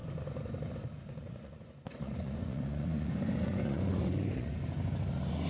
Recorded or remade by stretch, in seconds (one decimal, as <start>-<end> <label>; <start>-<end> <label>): 0.0-1.2 recorded; 1.2-4.5 remade; 4.5-5.5 recorded